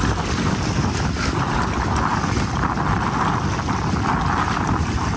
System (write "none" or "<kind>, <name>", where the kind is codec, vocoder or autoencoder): none